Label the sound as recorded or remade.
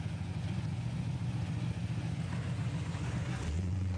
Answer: remade